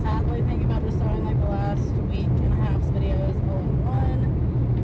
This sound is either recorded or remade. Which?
recorded